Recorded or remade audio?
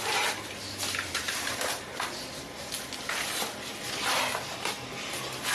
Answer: remade